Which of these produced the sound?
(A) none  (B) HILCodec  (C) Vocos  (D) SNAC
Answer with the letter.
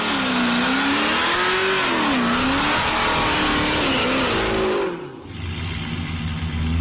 A